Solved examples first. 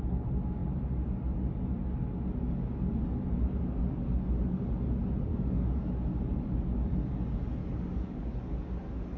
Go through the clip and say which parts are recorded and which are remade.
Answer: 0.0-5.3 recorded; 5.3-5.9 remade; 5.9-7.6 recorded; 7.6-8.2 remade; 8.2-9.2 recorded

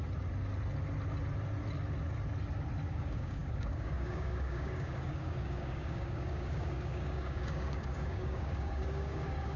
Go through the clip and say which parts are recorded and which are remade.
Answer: 0.0-2.9 recorded; 2.9-9.6 remade

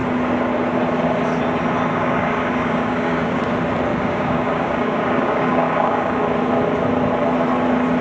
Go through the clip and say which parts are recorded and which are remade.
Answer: 0.0-1.9 recorded; 1.9-3.4 remade; 3.4-3.9 recorded; 3.9-6.2 remade; 6.2-8.0 recorded

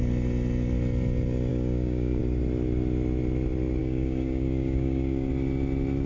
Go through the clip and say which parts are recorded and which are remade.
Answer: 0.0-1.5 recorded; 1.5-2.2 remade; 2.2-3.8 recorded; 3.8-5.3 remade; 5.3-6.1 recorded

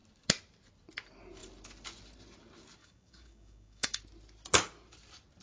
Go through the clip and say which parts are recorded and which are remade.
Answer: 0.0-2.8 recorded; 2.8-4.0 remade; 4.0-5.4 recorded

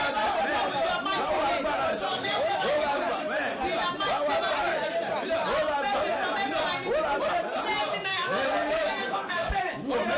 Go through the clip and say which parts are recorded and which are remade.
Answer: 0.0-2.1 recorded; 2.1-3.0 remade; 3.0-8.1 recorded; 8.1-9.7 remade; 9.7-10.2 recorded